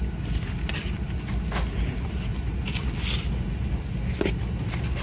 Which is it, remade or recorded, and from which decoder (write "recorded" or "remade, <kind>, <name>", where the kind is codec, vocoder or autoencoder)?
recorded